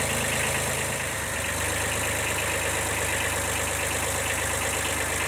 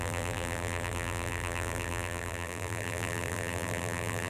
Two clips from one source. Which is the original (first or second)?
first